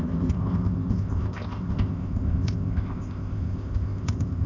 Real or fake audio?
fake